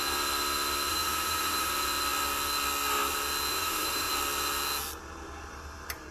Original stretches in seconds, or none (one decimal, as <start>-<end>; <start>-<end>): 0.0-0.9; 1.7-3.5; 4.1-6.1